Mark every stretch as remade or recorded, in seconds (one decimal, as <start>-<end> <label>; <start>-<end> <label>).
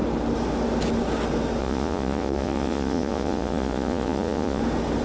0.0-1.6 recorded; 1.6-4.6 remade; 4.6-5.0 recorded